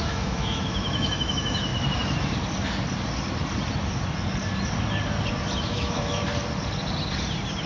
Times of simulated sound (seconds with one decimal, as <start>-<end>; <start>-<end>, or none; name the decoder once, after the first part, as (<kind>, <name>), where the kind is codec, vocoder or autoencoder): 0.0-1.7 (autoencoder, DAC-VAE); 5.6-6.2